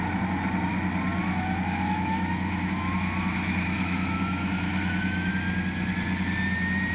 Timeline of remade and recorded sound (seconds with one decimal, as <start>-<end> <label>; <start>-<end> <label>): 0.0-1.2 recorded; 1.2-5.3 remade; 5.3-6.9 recorded

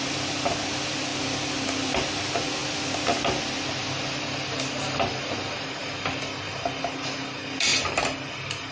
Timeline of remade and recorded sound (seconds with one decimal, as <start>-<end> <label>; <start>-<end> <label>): 0.0-8.7 recorded

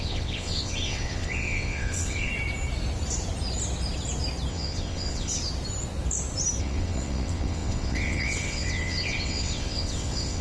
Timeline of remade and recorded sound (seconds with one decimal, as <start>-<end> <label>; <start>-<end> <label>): 0.0-2.3 remade; 2.3-4.5 recorded; 4.5-5.4 remade; 5.4-6.6 recorded; 6.6-10.4 remade

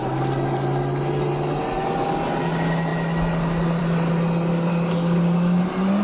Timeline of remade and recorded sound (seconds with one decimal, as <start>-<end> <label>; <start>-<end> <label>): 0.0-4.7 recorded; 4.7-5.6 remade; 5.6-6.0 recorded

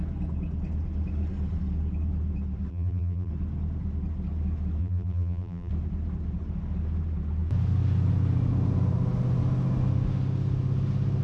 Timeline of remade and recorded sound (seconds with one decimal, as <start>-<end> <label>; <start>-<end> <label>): 0.0-2.7 recorded; 2.7-3.3 remade; 3.3-4.8 recorded; 4.8-5.7 remade; 5.7-11.2 recorded

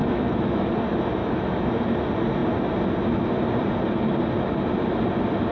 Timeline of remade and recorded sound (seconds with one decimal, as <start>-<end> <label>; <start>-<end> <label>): 0.0-0.7 remade; 0.7-1.2 recorded; 1.2-1.7 remade; 1.7-5.5 recorded

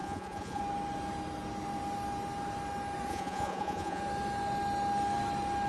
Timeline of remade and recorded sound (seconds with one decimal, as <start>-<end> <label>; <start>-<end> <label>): 0.0-0.6 remade; 0.6-3.1 recorded; 3.1-4.0 remade; 4.0-5.7 recorded